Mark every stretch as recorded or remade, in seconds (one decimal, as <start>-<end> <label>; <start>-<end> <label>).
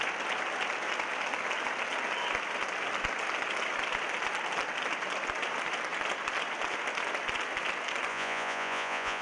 0.0-8.1 recorded; 8.1-9.2 remade